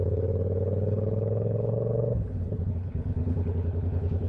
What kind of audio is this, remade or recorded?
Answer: remade